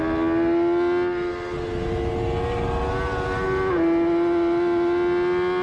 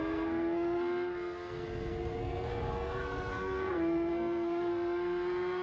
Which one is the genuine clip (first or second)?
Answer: first